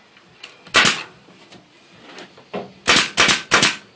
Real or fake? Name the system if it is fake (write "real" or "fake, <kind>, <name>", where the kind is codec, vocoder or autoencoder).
real